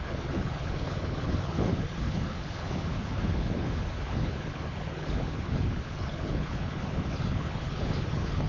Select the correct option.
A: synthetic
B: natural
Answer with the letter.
A